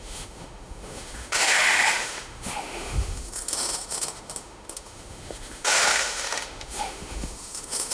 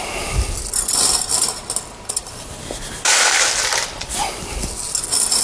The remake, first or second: first